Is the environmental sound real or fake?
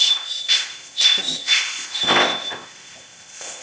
fake